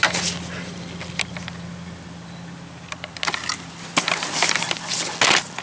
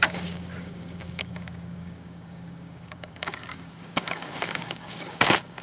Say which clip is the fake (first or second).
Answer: second